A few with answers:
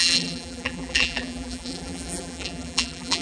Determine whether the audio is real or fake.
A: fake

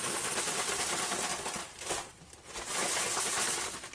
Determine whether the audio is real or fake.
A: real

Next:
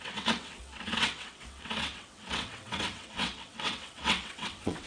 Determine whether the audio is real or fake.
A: fake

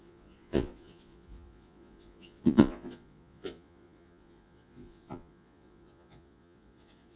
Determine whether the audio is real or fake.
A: fake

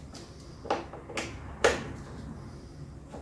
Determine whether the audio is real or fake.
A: real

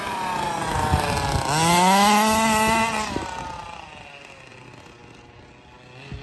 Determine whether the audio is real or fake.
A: real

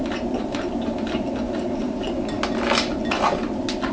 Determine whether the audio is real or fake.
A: real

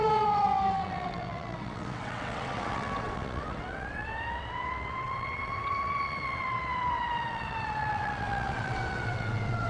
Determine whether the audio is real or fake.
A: fake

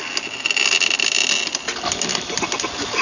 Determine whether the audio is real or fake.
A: real